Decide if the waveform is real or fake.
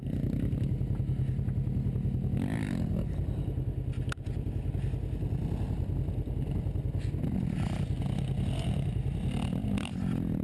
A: real